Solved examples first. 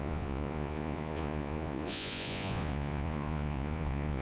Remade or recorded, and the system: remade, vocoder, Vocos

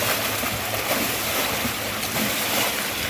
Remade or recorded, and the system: recorded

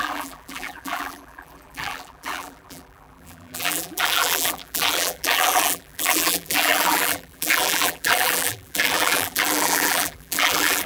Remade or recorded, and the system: remade, vocoder, BigVGAN v2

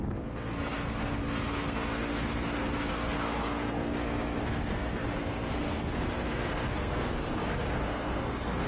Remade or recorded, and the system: remade, codec, SNAC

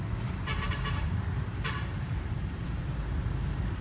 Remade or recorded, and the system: remade, vocoder, BigVGAN v2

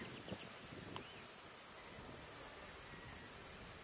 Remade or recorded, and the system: recorded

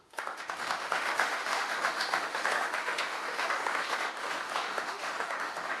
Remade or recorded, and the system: remade, autoencoder, DAC-VAE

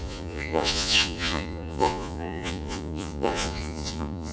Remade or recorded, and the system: remade, vocoder, Vocos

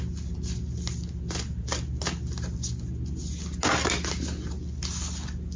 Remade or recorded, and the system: recorded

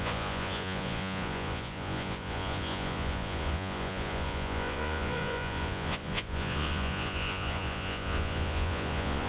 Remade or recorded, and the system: remade, vocoder, Vocos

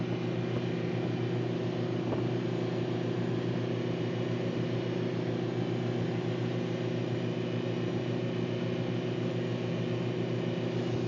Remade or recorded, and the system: recorded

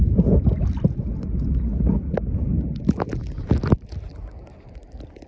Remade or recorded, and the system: recorded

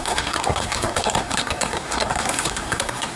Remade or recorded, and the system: remade, codec, SNAC